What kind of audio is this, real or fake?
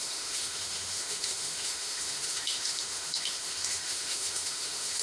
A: fake